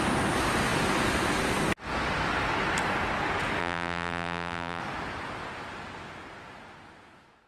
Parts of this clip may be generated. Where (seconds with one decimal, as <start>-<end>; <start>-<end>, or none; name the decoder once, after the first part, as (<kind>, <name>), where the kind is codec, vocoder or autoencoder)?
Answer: 3.6-4.8 (vocoder, BigVGAN v2)